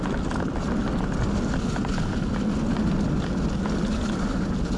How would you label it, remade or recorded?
recorded